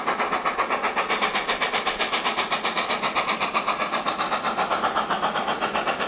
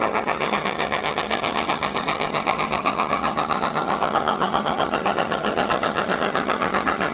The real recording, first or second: first